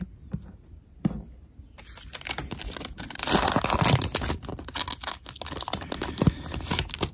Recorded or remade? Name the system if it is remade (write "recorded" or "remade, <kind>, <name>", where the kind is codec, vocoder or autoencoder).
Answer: recorded